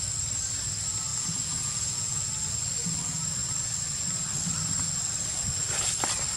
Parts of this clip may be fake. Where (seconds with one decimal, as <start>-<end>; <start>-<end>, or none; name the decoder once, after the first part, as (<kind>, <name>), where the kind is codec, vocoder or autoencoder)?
1.1-2.2 (vocoder, Vocos)